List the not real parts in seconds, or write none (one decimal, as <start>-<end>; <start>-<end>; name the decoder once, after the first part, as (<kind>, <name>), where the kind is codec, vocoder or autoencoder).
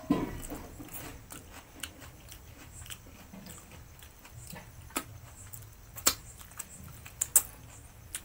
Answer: 0.0-1.1 (vocoder, BigVGAN v2); 2.0-7.3